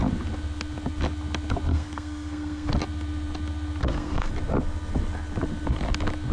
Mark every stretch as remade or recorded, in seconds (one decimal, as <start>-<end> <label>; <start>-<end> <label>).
0.0-1.7 recorded; 1.7-2.7 remade; 2.7-3.8 recorded; 3.8-4.3 remade; 4.3-6.3 recorded

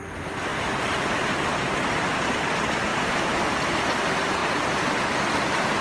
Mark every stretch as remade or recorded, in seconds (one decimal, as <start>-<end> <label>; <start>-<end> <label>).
0.0-0.5 recorded; 0.5-2.0 remade; 2.0-2.9 recorded; 2.9-3.4 remade; 3.4-4.4 recorded; 4.4-5.3 remade; 5.3-5.8 recorded